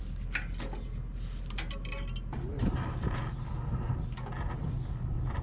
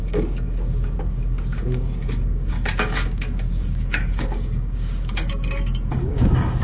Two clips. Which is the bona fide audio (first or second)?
first